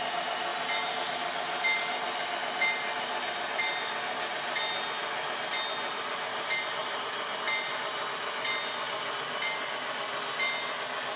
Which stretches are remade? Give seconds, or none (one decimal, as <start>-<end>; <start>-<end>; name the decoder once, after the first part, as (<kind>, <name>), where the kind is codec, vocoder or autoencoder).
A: 0.5-1.0 (vocoder, BigVGAN v2); 6.8-7.3